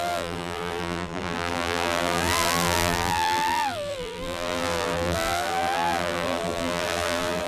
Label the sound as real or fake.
fake